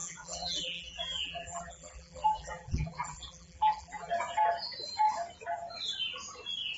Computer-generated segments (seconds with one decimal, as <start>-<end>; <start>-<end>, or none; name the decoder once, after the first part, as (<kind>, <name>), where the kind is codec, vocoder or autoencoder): 0.0-4.1 (vocoder, BigVGAN v2)